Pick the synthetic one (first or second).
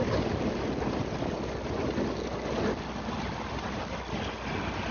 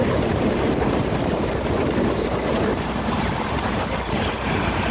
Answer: second